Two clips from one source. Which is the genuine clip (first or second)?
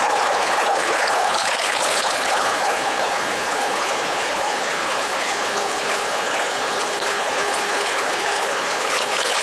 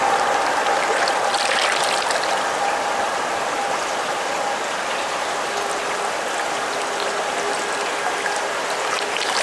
second